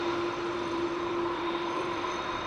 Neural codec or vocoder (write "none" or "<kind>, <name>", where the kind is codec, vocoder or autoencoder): vocoder, BigVGAN v2